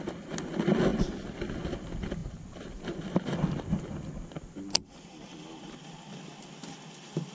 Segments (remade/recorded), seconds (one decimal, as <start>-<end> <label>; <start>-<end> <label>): 0.0-7.3 recorded